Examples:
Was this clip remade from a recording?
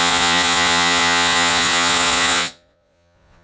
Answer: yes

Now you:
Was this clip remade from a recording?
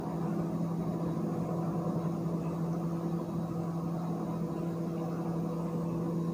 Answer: no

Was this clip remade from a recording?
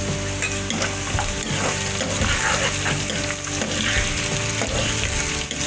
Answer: no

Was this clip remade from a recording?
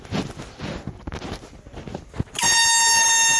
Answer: no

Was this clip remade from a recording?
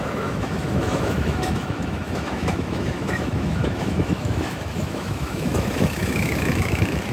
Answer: yes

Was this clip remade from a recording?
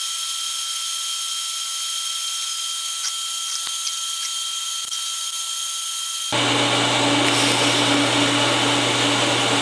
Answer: no